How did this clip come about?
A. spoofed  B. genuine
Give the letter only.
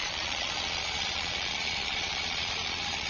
A